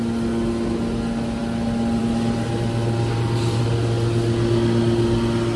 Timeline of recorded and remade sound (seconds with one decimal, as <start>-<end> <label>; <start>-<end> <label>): 0.0-5.6 recorded